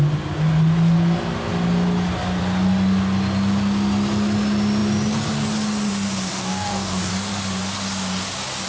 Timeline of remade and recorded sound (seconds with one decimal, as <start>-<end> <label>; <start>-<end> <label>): 0.0-6.4 recorded; 6.4-7.1 remade; 7.1-8.7 recorded